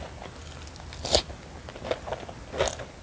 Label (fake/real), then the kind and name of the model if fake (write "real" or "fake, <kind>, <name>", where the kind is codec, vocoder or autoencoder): real